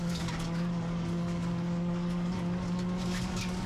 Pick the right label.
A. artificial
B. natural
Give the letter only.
A